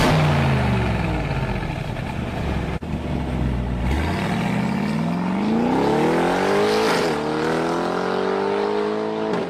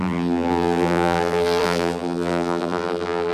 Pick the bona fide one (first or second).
first